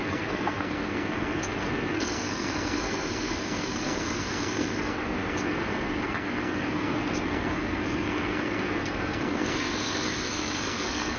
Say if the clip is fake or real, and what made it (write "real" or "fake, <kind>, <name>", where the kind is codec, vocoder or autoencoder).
fake, codec, SNAC